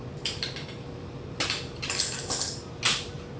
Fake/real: real